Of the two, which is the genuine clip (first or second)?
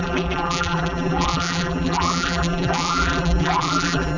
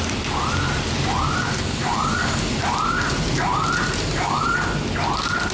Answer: second